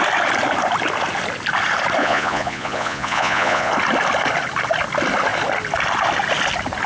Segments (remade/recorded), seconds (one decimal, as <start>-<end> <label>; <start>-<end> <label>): 0.0-2.0 recorded; 2.0-3.7 remade; 3.7-6.9 recorded